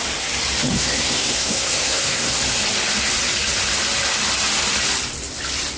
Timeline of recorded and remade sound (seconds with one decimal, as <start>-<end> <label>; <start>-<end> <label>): 0.0-0.7 recorded; 0.7-2.4 remade; 2.4-5.8 recorded